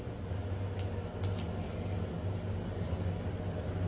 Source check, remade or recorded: recorded